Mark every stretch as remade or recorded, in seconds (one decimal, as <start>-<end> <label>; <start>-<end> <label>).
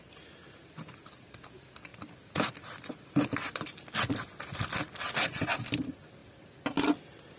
0.0-7.4 recorded